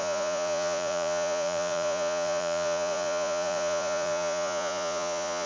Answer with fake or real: fake